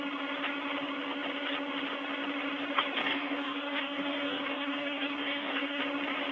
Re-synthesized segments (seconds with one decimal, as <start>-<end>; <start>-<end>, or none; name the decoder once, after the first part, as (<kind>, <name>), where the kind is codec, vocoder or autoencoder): 3.0-5.8 (codec, DAC)